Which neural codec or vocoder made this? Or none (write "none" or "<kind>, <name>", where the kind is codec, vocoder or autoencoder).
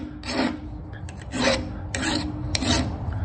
none